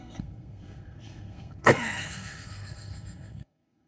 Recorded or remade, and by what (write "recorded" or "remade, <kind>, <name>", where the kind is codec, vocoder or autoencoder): remade, codec, SNAC